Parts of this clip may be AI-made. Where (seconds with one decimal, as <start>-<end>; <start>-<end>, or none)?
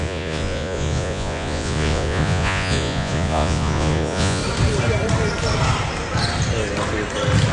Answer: 0.0-4.4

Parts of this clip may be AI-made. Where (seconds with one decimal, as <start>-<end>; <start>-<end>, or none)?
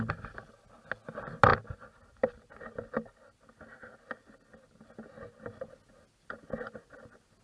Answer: none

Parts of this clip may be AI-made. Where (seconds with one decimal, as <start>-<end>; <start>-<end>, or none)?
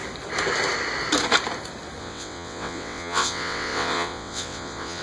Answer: 2.0-5.0